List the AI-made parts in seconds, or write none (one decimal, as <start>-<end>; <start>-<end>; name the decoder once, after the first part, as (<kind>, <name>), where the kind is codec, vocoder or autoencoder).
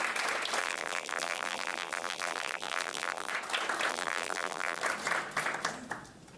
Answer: 0.6-3.3 (vocoder, BigVGAN v2); 3.9-4.8